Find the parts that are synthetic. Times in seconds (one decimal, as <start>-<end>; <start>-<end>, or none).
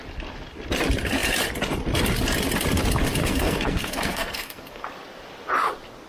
3.2-4.8